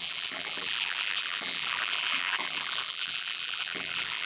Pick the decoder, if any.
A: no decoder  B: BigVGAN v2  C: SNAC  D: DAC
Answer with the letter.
B